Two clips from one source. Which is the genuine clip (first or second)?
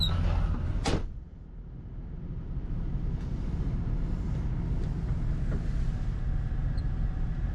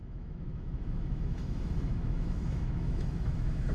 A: first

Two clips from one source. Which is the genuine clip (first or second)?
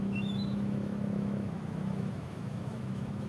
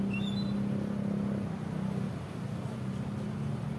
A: second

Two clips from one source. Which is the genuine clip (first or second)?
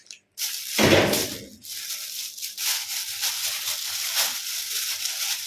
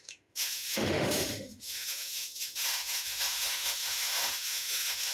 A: first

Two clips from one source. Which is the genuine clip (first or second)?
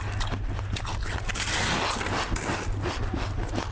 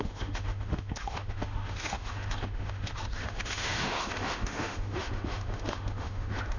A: first